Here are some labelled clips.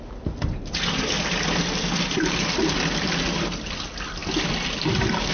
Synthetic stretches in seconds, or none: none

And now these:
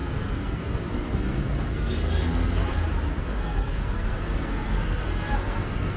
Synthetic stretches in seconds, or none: 0.0-2.6 (codec, SNAC); 3.2-6.0

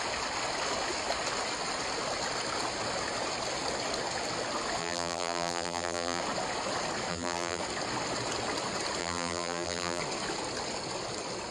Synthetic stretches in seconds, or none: 4.8-6.2 (vocoder, BigVGAN v2); 7.1-7.6; 9.0-10.0

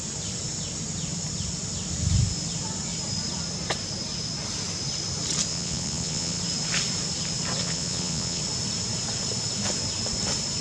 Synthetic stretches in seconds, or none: 5.5-6.4 (vocoder, Vocos); 7.6-8.4

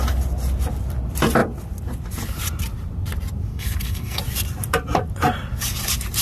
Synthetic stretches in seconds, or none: 3.5-4.2 (codec, SNAC)

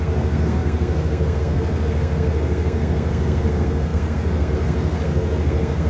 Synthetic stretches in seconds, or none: 0.0-5.9 (codec, SNAC)

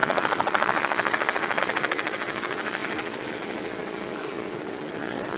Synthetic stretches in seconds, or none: 0.0-5.4 (vocoder, Vocos)

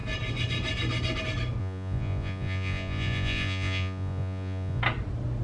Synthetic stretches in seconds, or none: 1.6-4.8 (vocoder, Vocos)